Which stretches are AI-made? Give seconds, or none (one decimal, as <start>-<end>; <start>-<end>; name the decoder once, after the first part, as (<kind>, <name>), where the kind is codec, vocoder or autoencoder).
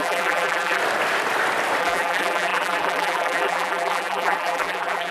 0.0-0.8 (vocoder, BigVGAN v2); 1.8-5.1